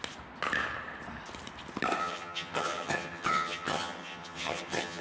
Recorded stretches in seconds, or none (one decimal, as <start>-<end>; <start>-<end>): 0.0-2.0